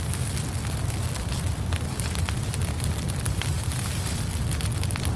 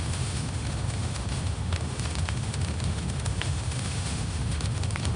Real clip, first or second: first